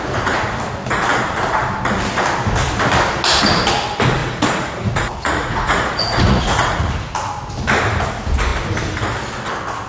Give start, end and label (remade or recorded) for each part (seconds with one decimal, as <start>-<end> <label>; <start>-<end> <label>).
0.0-4.2 recorded; 4.2-6.9 remade; 6.9-9.9 recorded